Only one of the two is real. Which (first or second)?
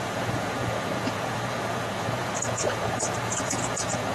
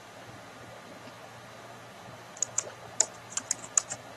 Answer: second